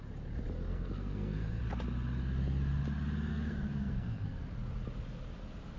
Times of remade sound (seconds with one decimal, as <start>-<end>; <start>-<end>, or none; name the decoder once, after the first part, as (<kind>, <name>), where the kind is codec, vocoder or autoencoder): 0.7-1.6 (codec, SNAC); 3.3-4.4